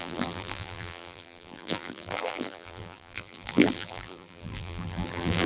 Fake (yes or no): yes